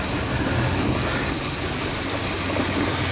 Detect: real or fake real